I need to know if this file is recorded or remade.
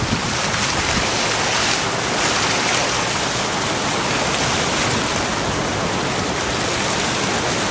recorded